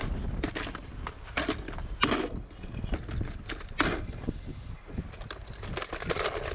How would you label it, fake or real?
real